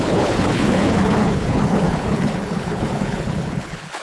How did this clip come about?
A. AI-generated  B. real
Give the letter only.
A